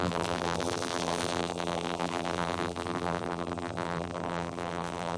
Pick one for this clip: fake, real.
fake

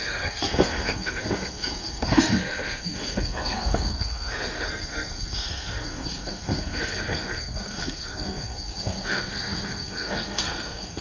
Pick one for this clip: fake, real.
fake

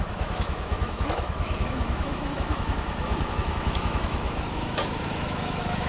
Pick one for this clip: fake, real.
fake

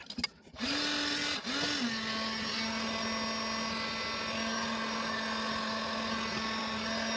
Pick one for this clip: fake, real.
real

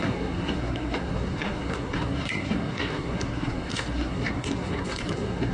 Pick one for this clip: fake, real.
fake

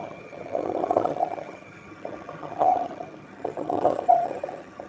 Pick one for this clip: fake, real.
fake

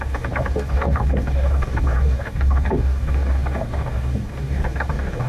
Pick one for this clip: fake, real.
fake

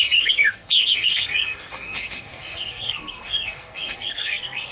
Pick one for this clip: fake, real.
fake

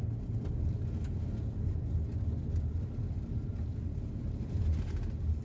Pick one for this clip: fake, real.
real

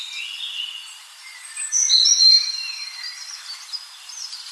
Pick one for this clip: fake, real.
fake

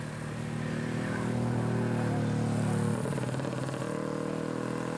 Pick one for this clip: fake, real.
real